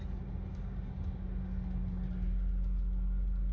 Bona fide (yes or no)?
yes